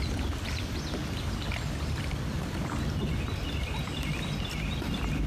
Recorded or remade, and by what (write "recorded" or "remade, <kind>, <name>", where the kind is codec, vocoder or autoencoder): recorded